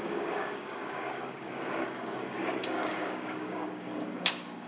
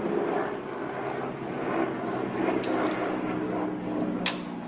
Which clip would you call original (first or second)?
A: second